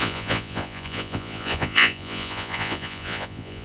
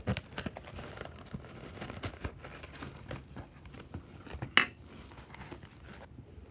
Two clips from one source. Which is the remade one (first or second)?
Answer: first